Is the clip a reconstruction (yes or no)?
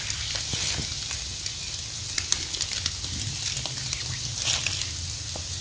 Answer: no